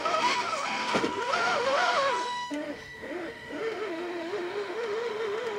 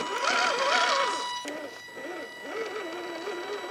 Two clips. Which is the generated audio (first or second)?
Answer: first